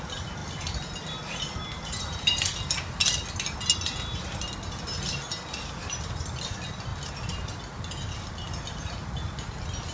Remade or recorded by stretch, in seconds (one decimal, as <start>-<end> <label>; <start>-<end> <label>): 0.0-9.9 recorded